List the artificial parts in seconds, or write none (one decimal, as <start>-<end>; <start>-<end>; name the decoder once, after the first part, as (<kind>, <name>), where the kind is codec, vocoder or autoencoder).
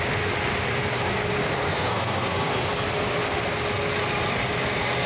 1.7-2.5 (codec, SNAC)